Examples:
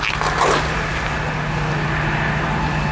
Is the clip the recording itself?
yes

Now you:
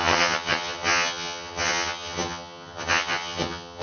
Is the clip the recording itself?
no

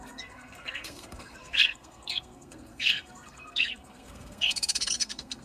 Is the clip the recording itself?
no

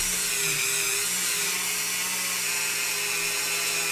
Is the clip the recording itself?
yes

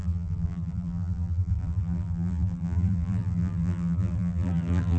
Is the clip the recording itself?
no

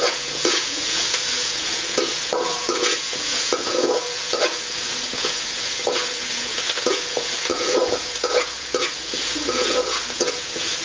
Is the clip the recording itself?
no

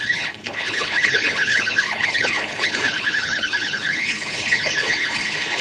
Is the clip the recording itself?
no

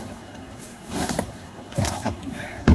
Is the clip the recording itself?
no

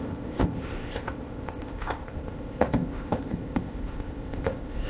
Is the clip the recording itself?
no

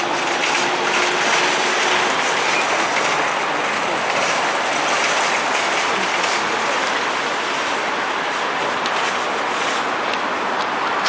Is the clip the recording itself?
yes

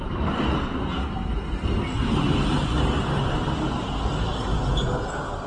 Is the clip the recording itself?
yes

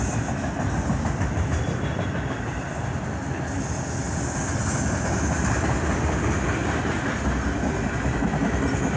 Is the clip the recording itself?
yes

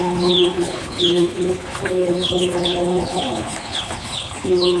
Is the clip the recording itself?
no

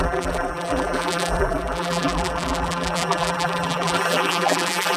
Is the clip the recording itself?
no